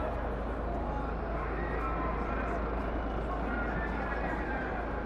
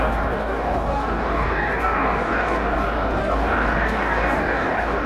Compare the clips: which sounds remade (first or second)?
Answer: second